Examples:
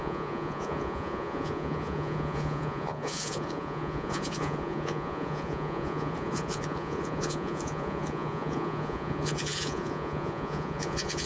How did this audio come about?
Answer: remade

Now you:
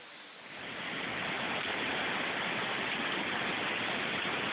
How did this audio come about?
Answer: recorded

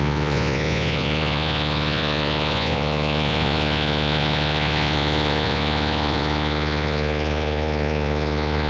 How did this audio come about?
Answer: remade